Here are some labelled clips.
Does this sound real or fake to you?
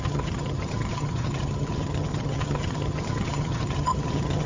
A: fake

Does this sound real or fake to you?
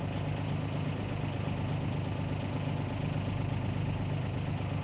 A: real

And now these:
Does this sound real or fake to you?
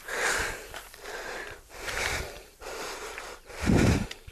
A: fake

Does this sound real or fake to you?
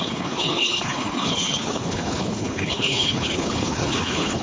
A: fake